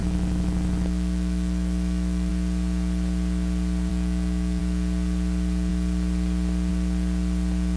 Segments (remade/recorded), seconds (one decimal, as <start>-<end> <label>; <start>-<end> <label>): 0.0-2.3 remade; 2.3-3.9 recorded; 3.9-4.6 remade; 4.6-7.8 recorded